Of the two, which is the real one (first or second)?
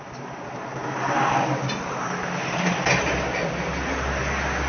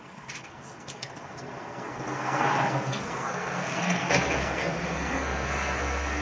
first